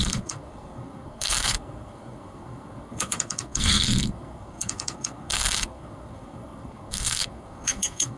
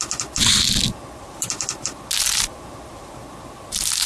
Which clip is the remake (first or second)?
first